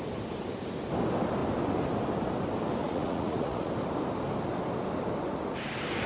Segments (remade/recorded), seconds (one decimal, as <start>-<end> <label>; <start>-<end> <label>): 0.0-2.8 recorded; 2.8-3.7 remade; 3.7-6.1 recorded